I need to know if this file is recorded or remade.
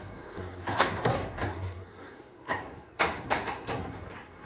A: remade